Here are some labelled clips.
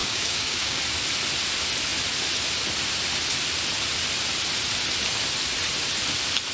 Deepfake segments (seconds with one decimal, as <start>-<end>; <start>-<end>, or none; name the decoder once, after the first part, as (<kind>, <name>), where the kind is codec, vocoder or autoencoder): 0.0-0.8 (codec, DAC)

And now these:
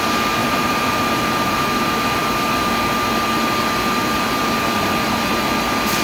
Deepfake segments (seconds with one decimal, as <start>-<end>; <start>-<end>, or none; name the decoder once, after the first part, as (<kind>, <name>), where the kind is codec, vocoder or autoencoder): 0.4-1.6 (vocoder, BigVGAN v2)

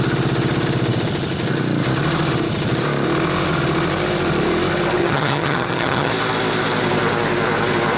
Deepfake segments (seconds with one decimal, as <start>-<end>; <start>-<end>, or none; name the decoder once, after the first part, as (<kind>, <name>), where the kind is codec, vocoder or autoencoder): 5.0-6.1 (vocoder, HiFi-GAN)

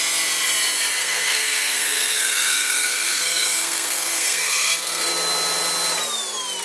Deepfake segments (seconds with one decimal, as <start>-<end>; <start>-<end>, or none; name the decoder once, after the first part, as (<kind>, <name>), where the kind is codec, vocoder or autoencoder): 1.0-5.0 (codec, SNAC)

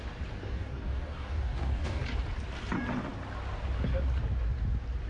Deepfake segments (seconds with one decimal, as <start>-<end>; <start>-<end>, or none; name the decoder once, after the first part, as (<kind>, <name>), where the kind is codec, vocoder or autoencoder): 0.4-2.0 (codec, DAC)

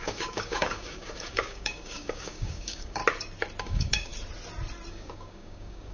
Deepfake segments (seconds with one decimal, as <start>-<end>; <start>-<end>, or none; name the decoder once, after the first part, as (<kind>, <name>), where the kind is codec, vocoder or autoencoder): 0.0-3.0 (codec, DAC); 3.6-4.1; 4.9-5.9